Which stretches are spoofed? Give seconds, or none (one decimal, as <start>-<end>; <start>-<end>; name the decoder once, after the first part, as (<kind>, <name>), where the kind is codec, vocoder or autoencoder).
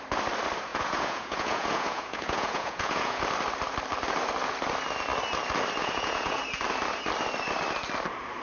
0.7-3.2 (vocoder, Vocos); 5.8-6.4